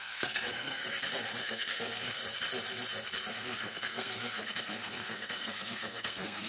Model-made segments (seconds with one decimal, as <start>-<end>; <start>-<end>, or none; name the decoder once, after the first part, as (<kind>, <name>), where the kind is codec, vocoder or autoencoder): 0.0-0.8 (codec, SNAC); 1.4-2.2; 3.3-6.5